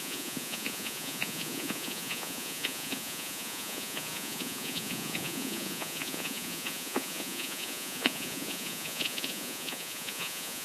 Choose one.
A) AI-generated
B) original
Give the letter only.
A